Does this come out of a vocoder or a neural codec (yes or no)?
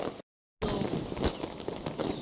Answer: no